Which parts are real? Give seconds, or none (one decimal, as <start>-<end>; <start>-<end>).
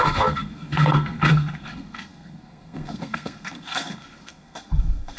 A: none